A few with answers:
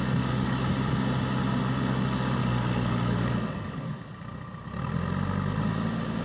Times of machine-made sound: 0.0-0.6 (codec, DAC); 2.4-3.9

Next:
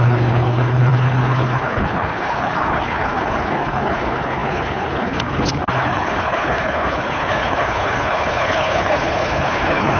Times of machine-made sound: 0.0-10.0 (codec, HILCodec)